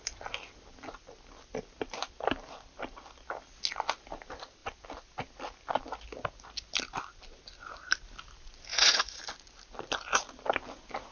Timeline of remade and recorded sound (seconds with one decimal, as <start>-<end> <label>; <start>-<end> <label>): 0.0-8.7 recorded; 8.7-9.2 remade; 9.2-11.1 recorded